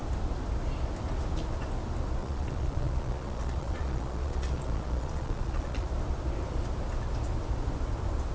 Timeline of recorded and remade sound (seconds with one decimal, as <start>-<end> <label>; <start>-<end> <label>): 0.0-2.2 recorded; 2.2-5.9 remade; 5.9-8.3 recorded